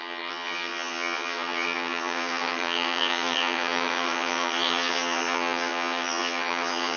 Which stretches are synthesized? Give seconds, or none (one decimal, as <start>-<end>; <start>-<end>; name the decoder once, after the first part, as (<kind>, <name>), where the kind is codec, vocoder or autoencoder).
0.0-7.0 (vocoder, HiFi-GAN)